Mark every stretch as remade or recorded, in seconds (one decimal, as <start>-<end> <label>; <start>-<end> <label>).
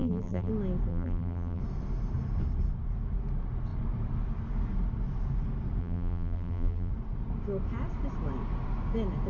0.0-0.5 remade; 0.5-0.9 recorded; 0.9-1.6 remade; 1.6-5.8 recorded; 5.8-6.9 remade; 6.9-9.3 recorded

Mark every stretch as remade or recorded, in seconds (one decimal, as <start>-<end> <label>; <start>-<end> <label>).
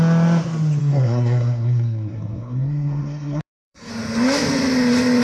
0.0-0.8 recorded; 0.8-3.9 remade; 3.9-5.2 recorded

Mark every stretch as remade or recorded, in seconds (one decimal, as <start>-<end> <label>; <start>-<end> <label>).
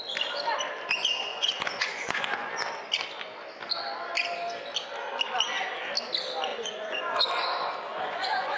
0.0-1.3 recorded; 1.3-2.5 remade; 2.5-6.5 recorded; 6.5-7.3 remade; 7.3-7.9 recorded; 7.9-8.6 remade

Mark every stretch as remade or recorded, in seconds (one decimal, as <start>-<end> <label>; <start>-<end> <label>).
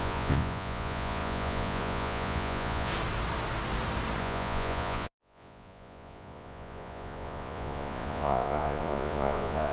0.0-2.9 remade; 2.9-4.2 recorded; 4.2-9.7 remade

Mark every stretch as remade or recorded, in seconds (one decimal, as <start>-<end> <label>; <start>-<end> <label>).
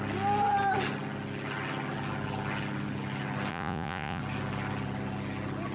0.0-3.5 recorded; 3.5-4.2 remade; 4.2-5.7 recorded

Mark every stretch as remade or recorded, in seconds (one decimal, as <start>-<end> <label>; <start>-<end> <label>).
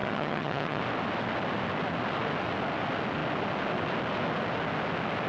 0.0-0.8 remade; 0.8-5.3 recorded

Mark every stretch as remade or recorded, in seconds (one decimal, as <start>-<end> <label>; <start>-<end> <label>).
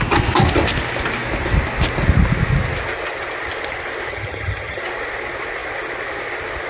0.0-4.1 recorded; 4.1-4.8 remade; 4.8-6.7 recorded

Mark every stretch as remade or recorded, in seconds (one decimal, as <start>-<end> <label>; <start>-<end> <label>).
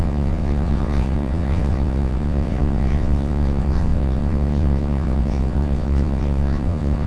0.0-7.1 remade